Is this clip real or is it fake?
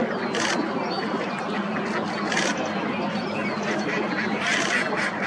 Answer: real